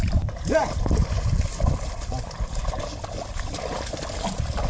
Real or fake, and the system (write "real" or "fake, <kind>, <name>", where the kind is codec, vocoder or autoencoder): real